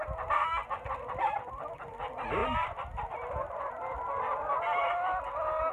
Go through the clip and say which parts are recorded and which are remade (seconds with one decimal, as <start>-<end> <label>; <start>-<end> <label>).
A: 0.0-0.6 remade; 0.6-1.5 recorded; 1.5-2.4 remade; 2.4-5.7 recorded